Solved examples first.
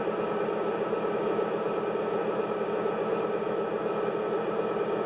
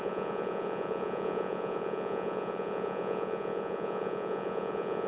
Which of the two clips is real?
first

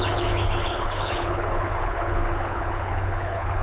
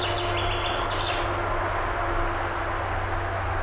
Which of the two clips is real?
second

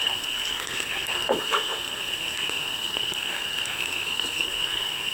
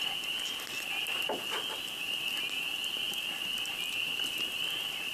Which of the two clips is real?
second